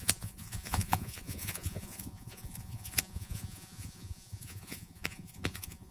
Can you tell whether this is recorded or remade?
remade